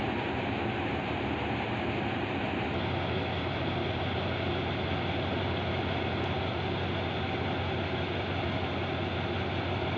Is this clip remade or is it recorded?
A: recorded